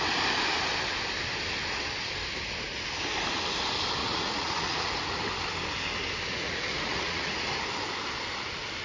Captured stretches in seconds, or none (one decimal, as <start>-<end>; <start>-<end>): 0.0-4.0; 4.9-6.3; 7.6-8.8